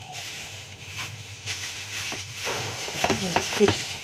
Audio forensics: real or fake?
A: fake